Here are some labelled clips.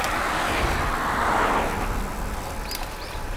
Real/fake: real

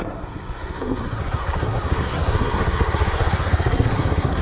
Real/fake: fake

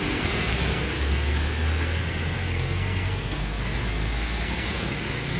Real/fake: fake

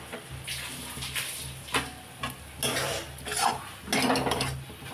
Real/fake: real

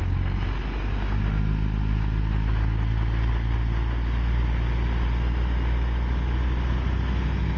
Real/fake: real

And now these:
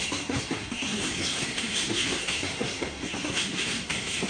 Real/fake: fake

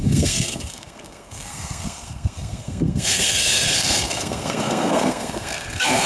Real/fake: fake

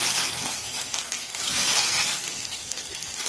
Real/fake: fake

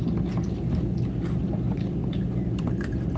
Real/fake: real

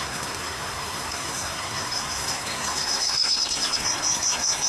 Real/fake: fake